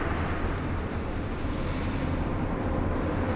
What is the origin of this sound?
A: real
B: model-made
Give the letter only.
A